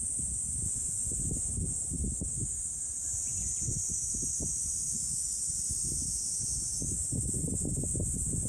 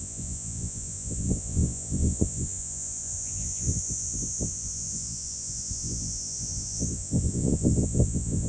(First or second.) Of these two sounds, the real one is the first